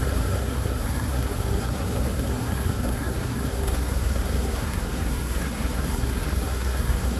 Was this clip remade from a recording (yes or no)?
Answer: yes